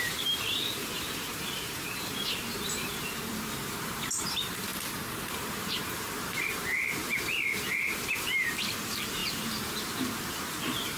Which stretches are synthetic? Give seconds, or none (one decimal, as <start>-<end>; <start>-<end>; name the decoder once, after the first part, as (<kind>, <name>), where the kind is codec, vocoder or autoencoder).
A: 0.0-4.7 (vocoder, BigVGAN v2); 5.3-11.0